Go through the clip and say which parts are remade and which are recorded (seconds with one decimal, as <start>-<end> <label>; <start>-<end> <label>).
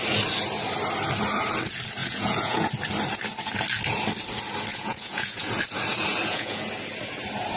0.0-2.0 recorded; 2.0-2.7 remade; 2.7-4.7 recorded; 4.7-5.6 remade; 5.6-6.1 recorded; 6.1-6.7 remade; 6.7-7.6 recorded